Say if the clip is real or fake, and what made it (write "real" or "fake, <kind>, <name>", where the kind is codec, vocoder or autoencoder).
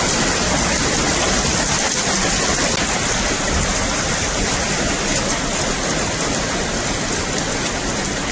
real